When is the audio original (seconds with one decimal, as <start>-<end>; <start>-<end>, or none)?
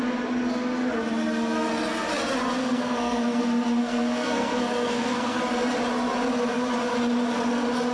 0.0-2.6; 3.4-3.8; 5.4-7.9